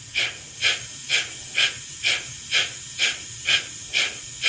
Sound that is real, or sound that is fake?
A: real